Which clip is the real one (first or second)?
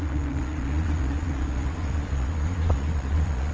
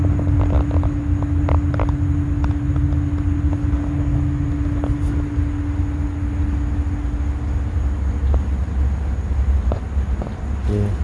second